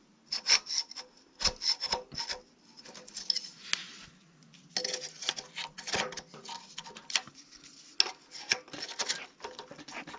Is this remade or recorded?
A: recorded